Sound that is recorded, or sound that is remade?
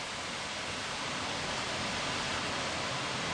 recorded